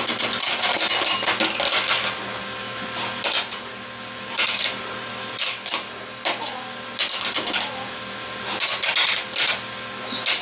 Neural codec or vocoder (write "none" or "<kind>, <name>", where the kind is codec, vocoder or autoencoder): none